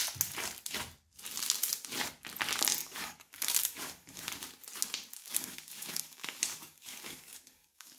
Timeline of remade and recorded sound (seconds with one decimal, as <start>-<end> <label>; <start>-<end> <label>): 0.0-2.8 recorded; 2.8-4.3 remade; 4.3-5.2 recorded; 5.2-8.0 remade